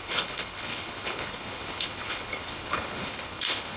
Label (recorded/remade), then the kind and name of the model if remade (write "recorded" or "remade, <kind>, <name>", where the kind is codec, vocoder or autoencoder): remade, codec, HILCodec